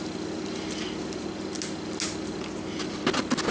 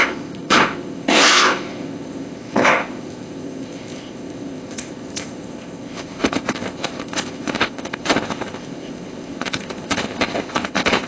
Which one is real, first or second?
first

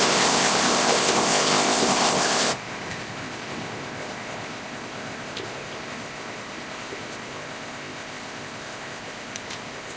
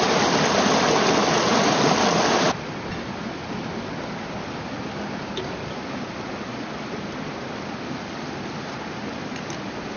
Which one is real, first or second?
second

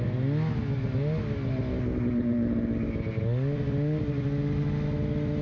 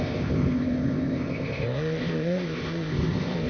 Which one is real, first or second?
first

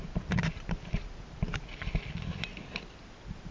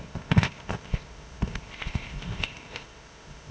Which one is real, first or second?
first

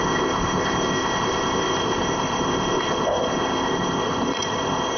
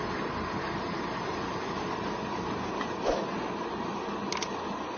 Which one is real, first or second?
second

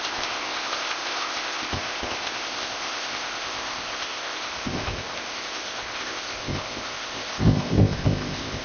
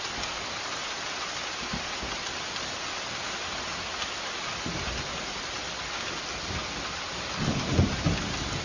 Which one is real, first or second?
second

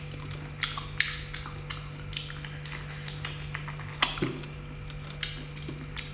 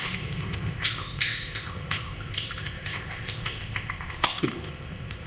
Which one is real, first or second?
first